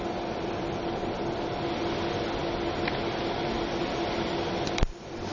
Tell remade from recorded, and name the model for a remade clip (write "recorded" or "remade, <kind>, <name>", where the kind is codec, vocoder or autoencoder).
remade, vocoder, BigVGAN v2